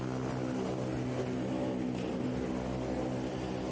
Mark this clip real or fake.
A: real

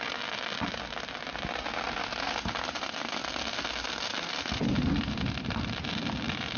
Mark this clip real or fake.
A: real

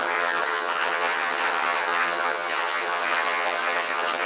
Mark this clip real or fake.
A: fake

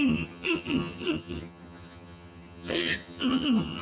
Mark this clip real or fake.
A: fake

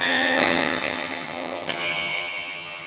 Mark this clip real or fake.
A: fake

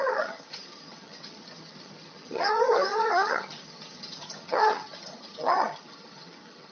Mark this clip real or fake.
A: fake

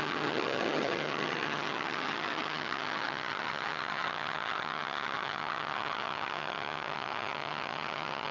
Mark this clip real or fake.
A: fake